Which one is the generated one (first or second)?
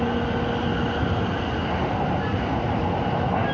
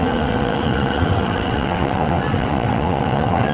second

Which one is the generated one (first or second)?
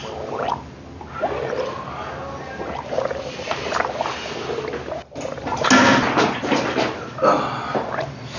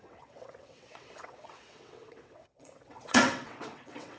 second